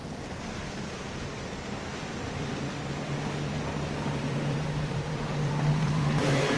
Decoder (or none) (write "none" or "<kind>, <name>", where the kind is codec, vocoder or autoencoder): vocoder, BigVGAN v2